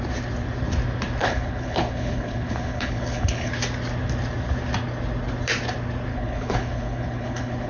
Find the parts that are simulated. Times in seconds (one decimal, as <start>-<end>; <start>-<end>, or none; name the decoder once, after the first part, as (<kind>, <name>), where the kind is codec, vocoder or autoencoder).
1.2-3.5 (codec, HILCodec); 6.1-7.7